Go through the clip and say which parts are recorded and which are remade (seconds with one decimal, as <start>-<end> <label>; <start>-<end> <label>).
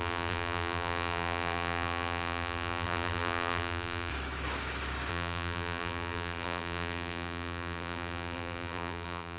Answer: 0.0-4.1 remade; 4.1-5.1 recorded; 5.1-9.4 remade